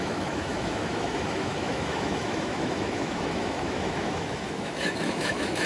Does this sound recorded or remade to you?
remade